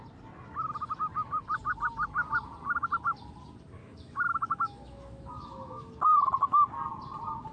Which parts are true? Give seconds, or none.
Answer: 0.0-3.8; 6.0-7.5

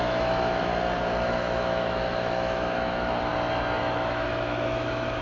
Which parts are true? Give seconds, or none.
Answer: 0.7-1.3; 3.3-3.8

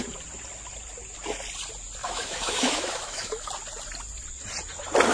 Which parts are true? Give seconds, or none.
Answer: 0.0-2.0; 3.5-5.1

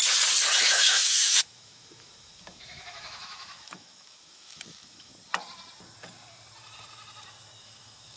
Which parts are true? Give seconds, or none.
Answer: 0.0-0.6; 5.1-7.6